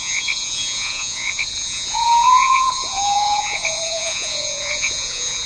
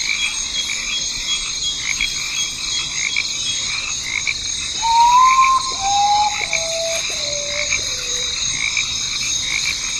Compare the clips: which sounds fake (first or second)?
first